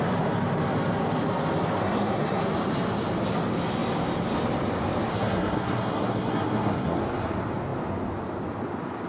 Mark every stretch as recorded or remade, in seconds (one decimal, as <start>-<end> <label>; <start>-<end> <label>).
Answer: 0.0-1.8 recorded; 1.8-2.4 remade; 2.4-5.1 recorded; 5.1-7.0 remade; 7.0-9.1 recorded